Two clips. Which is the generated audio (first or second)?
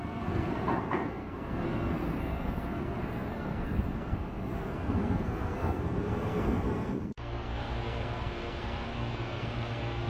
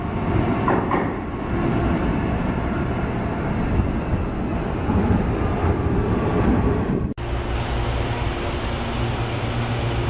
first